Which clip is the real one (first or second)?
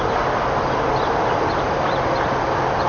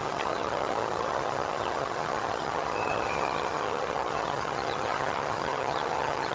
first